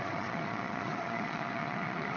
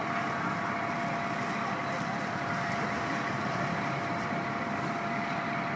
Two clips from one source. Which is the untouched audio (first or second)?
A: second